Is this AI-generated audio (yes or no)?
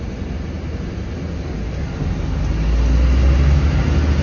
no